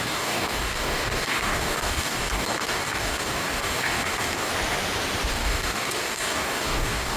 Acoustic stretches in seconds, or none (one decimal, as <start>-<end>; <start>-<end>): 4.5-5.3